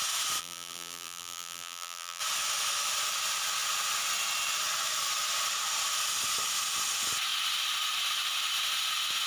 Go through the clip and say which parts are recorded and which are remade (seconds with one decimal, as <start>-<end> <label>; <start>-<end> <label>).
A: 0.0-0.4 recorded; 0.4-2.2 remade; 2.2-9.3 recorded